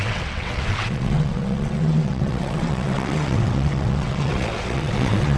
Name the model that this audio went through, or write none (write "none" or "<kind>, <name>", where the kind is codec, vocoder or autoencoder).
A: vocoder, WaveNeXt